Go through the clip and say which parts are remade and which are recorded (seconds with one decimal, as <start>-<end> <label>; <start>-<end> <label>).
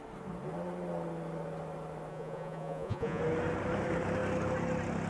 0.0-2.1 recorded; 2.1-3.2 remade; 3.2-5.1 recorded